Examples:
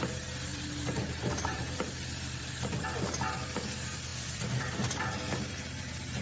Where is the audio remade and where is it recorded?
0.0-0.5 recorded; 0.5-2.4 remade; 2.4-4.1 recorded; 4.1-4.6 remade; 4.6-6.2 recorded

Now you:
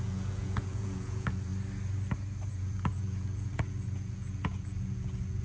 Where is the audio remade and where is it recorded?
0.0-1.5 remade; 1.5-2.5 recorded; 2.5-5.4 remade

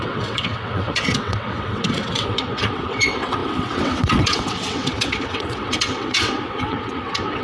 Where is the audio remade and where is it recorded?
0.0-7.4 remade

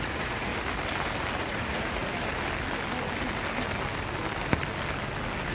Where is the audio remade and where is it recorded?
0.0-0.5 remade; 0.5-1.4 recorded; 1.4-2.1 remade; 2.1-5.5 recorded

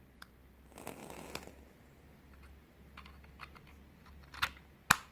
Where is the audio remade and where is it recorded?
0.0-5.1 recorded

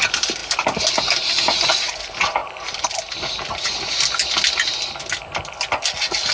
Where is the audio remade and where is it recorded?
0.0-6.3 recorded

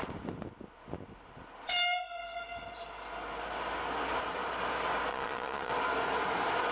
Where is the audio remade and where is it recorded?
0.0-5.1 recorded; 5.1-5.7 remade; 5.7-6.7 recorded